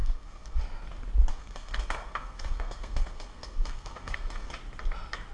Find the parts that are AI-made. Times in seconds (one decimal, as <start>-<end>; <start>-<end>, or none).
0.0-0.6; 1.3-4.5

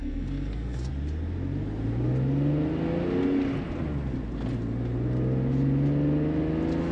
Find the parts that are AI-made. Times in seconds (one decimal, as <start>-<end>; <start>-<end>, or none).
0.0-0.9

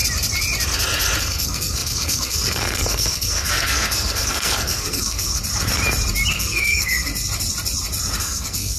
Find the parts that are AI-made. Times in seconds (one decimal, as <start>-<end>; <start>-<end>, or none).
1.2-5.4; 6.3-7.1; 8.2-8.8

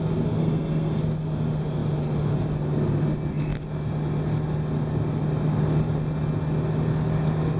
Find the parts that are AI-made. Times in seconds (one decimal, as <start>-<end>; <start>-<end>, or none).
0.4-1.0

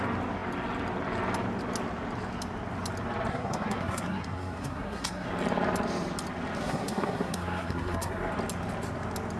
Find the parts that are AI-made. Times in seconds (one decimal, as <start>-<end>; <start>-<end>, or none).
3.3-5.3; 6.6-8.3